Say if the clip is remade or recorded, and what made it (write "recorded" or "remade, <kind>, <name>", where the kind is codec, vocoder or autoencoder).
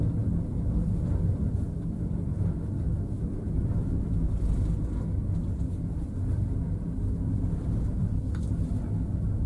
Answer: remade, vocoder, BigVGAN v2